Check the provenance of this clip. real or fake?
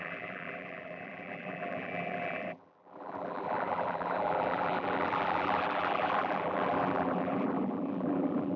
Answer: fake